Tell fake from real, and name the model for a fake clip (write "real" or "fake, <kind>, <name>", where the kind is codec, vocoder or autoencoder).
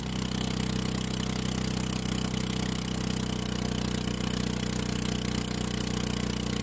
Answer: real